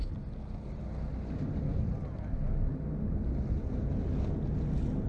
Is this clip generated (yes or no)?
no